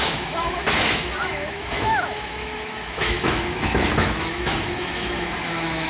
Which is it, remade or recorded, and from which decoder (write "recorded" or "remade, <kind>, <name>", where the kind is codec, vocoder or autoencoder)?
remade, autoencoder, DAC-VAE